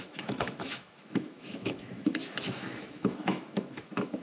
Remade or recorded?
remade